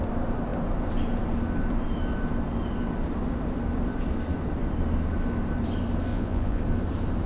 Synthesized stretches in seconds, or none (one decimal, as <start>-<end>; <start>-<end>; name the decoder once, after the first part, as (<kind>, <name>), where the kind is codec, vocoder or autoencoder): 6.1-6.6 (vocoder, Vocos)